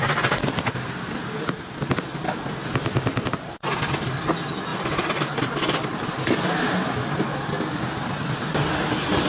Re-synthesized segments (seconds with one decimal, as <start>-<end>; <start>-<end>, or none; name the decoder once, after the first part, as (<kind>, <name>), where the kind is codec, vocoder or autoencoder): none